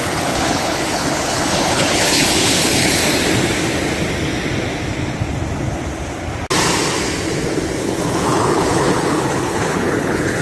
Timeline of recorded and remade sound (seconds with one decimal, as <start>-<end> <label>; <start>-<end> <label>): 0.0-3.0 remade; 3.0-7.8 recorded; 7.8-10.4 remade